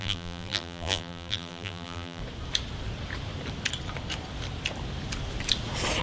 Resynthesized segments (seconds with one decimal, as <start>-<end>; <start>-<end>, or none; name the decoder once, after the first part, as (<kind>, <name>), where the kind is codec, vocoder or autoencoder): 0.0-2.2 (vocoder, BigVGAN v2)